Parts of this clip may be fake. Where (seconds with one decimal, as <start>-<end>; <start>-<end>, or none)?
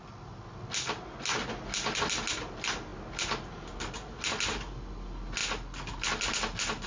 none